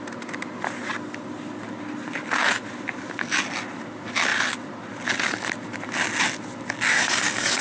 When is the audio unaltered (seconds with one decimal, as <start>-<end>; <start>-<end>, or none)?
0.0-6.9